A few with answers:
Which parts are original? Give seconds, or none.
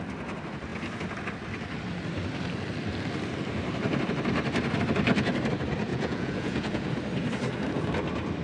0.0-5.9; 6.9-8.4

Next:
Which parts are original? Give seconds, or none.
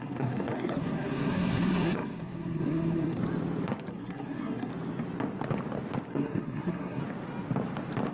3.2-3.9; 4.7-6.1; 7.0-8.1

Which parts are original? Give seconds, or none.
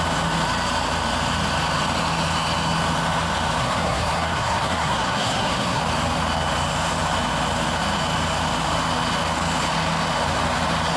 0.0-3.6; 5.8-11.0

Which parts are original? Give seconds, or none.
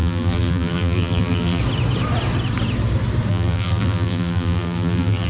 1.6-3.3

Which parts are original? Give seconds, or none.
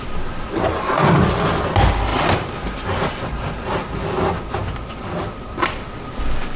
0.0-6.6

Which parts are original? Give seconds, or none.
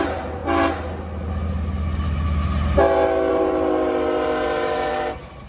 0.4-3.3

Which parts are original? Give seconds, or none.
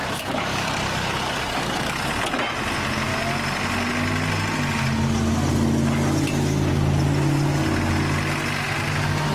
2.0-9.3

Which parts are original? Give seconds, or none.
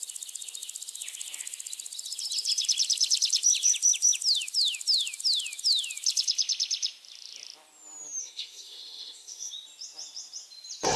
0.0-8.2; 9.5-11.0